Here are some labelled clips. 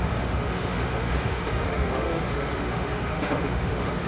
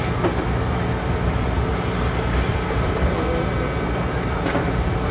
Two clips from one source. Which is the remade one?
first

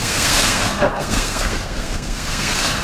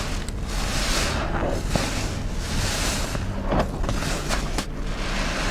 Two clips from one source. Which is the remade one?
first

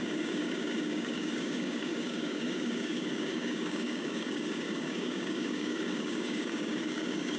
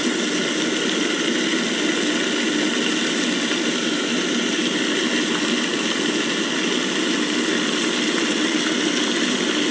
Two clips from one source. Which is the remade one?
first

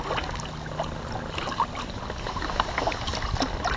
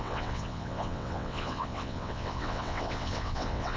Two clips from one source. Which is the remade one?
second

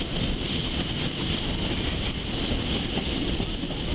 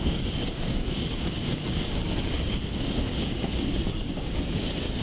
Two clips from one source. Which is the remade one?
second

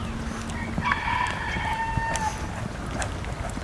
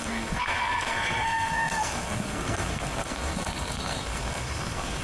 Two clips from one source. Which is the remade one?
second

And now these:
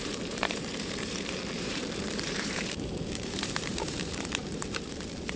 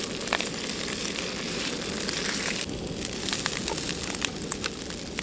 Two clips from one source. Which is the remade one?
first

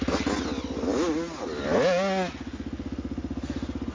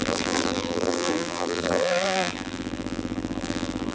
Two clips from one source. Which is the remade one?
second